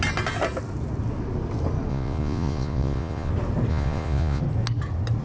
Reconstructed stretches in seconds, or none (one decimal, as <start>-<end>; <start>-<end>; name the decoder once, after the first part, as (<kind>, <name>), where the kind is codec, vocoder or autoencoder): 1.9-3.3 (vocoder, Vocos); 3.7-4.4